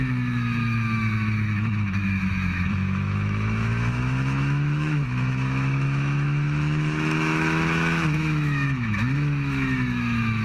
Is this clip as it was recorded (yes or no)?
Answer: no